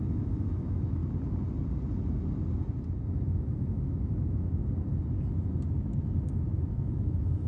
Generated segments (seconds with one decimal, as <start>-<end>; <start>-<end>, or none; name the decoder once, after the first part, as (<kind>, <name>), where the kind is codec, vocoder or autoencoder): 0.0-1.0 (autoencoder, DAC-VAE); 3.1-4.6; 6.2-7.5